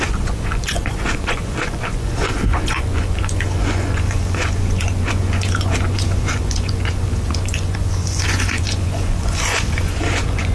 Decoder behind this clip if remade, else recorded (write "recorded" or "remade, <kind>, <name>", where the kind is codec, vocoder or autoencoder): remade, vocoder, Vocos